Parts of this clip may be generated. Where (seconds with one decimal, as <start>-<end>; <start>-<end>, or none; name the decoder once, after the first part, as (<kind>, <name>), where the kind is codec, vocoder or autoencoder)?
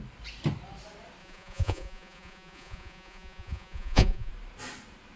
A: 1.2-4.3 (vocoder, Vocos)